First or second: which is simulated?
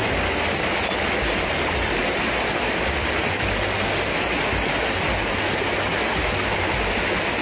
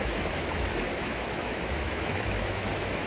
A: second